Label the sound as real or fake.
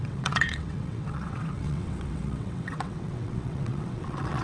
fake